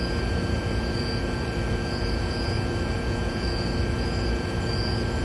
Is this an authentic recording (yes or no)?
no